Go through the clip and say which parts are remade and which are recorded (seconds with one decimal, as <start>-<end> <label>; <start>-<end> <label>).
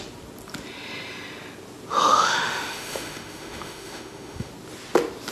0.0-1.9 recorded; 1.9-4.5 remade; 4.5-5.3 recorded